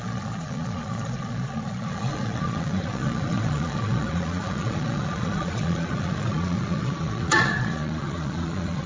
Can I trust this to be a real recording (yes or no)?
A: no